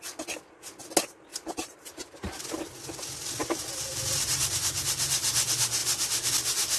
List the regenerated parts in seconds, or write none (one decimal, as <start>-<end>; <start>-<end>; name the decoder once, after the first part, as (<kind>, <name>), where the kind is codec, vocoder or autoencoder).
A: 1.3-2.6 (vocoder, BigVGAN v2); 3.4-4.5